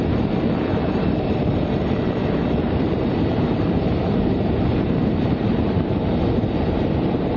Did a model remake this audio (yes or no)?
yes